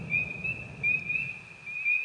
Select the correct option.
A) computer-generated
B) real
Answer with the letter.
B